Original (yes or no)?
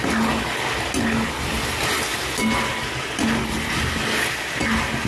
yes